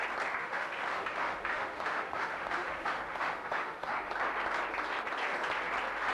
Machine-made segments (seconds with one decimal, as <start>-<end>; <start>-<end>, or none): 0.4-4.1

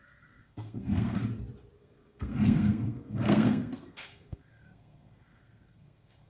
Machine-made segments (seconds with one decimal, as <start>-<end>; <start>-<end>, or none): 0.0-1.2; 1.8-6.3

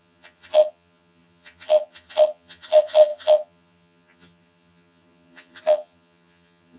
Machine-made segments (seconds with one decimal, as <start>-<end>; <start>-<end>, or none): 0.0-6.8

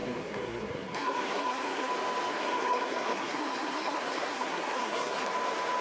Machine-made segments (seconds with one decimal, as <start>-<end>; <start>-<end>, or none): 0.0-1.9; 2.3-5.3